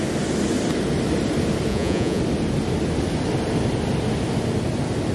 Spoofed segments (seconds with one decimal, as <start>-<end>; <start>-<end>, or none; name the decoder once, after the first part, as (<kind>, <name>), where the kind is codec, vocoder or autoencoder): 1.7-2.2 (vocoder, Vocos)